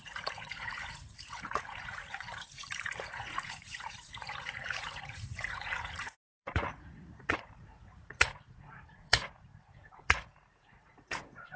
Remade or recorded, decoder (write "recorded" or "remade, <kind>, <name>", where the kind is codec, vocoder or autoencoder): remade, vocoder, Vocos